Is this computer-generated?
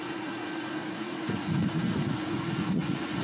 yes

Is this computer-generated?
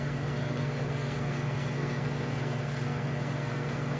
yes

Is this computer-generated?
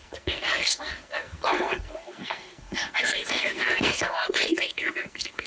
yes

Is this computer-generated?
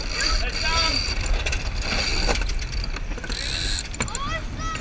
no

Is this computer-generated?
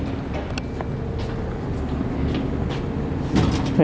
no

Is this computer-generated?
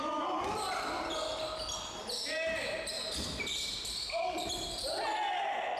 no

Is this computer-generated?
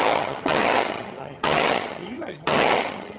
yes